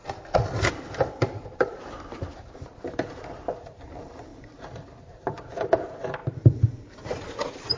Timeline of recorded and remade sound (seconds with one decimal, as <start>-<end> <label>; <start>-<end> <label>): 0.0-0.9 recorded; 0.9-4.3 remade; 4.3-5.0 recorded; 5.0-7.8 remade